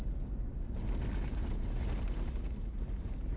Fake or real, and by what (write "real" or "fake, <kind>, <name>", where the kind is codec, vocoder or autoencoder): real